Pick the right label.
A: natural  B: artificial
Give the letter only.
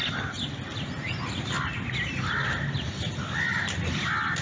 A